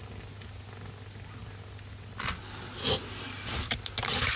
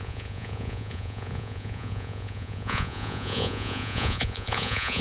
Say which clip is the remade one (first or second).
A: second